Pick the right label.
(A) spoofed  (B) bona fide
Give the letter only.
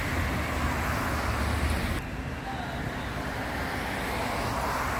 B